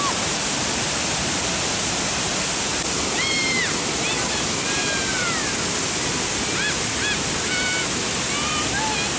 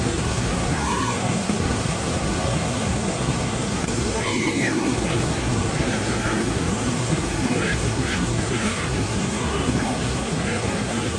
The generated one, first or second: second